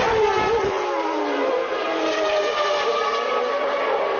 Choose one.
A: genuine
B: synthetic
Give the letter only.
A